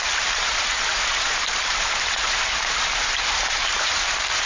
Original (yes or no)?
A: no